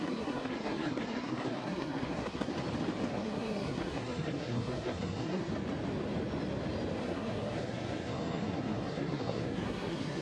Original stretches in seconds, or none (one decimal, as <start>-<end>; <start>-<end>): 2.5-3.1; 5.4-7.0